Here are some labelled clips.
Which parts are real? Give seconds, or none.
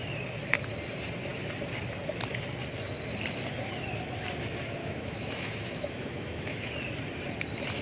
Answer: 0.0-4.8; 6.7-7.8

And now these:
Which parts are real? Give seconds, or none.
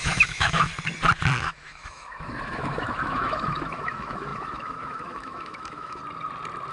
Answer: 0.7-1.4; 6.0-6.7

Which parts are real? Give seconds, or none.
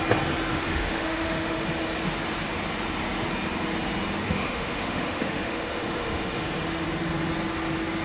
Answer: 0.0-0.5; 1.7-4.2; 6.8-8.0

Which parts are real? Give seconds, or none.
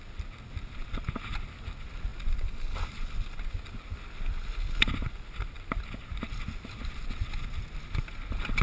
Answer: 0.0-8.6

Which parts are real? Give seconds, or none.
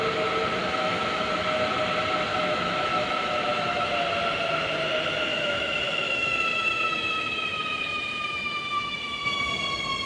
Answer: 0.0-0.6; 1.3-2.3; 3.9-5.3; 9.5-10.1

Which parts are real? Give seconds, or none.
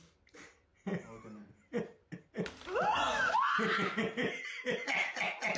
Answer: 0.0-5.6